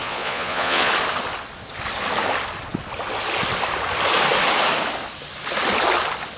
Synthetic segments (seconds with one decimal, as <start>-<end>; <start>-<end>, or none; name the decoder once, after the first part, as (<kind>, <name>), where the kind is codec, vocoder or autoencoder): 0.0-0.9 (vocoder, Vocos)